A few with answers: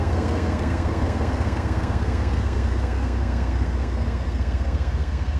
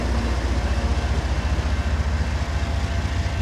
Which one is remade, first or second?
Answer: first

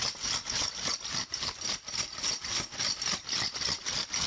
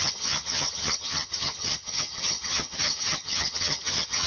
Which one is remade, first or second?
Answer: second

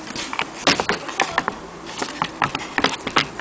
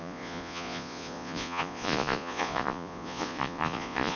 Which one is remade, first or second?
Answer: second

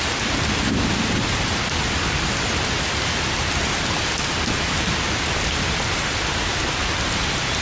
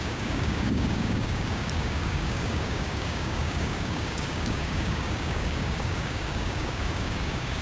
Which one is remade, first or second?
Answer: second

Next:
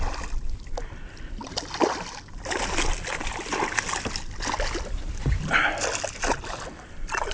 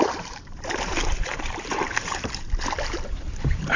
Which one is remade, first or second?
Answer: second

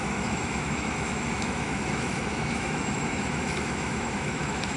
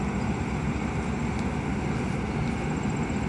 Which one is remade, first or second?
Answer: first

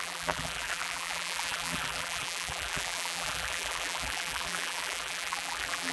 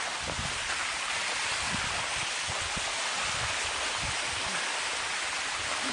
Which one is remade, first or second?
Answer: first